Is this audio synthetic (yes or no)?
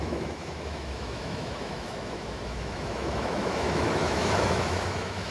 yes